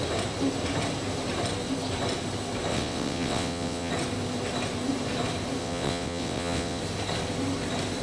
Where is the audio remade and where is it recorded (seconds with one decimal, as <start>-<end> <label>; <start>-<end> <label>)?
0.0-2.7 recorded; 2.7-3.9 remade; 3.9-5.6 recorded; 5.6-6.8 remade; 6.8-8.0 recorded